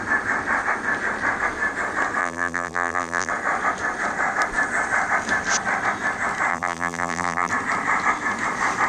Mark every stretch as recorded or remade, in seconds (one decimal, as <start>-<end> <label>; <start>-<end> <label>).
0.0-2.2 recorded; 2.2-3.3 remade; 3.3-6.5 recorded; 6.5-7.5 remade; 7.5-8.9 recorded